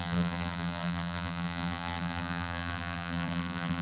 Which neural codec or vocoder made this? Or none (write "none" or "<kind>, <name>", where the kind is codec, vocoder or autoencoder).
vocoder, BigVGAN v2